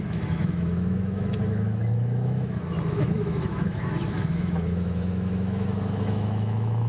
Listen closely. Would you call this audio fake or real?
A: fake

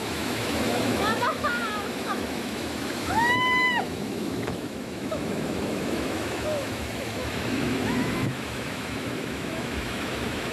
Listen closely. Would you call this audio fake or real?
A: fake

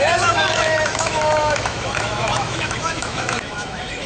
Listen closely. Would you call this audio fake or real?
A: fake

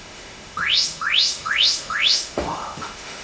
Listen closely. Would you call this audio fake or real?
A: fake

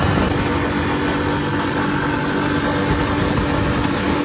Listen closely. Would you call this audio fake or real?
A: real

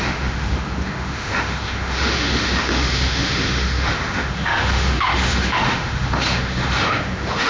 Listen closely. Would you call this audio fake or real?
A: fake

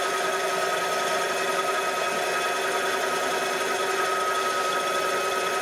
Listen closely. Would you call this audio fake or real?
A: real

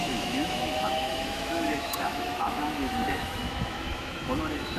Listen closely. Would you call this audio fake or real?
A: fake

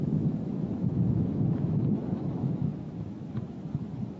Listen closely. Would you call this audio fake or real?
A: fake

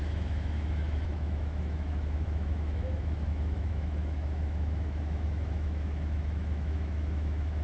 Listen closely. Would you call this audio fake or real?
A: fake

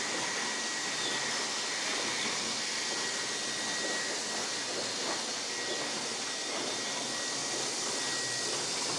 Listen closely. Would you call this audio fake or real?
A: real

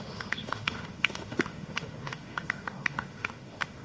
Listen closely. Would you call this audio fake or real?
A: fake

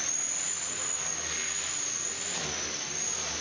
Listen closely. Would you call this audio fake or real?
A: real